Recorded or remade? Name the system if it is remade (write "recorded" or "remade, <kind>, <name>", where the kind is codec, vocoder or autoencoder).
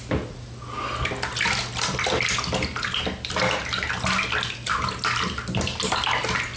recorded